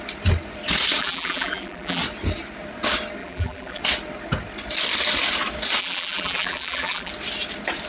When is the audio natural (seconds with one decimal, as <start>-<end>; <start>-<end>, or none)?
0.0-1.0; 2.0-3.2; 3.8-5.8; 7.1-7.9